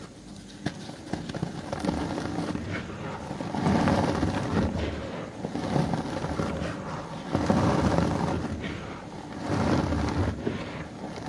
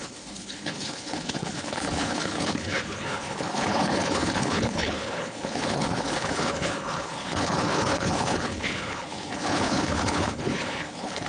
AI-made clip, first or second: second